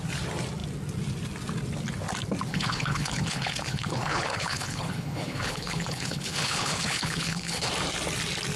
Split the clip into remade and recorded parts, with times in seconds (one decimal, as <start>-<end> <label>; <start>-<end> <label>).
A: 0.0-2.5 recorded; 2.5-7.7 remade; 7.7-8.6 recorded

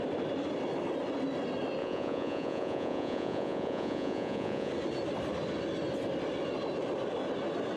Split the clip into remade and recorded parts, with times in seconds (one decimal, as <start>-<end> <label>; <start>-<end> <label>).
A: 0.0-1.8 recorded; 1.8-4.7 remade; 4.7-7.8 recorded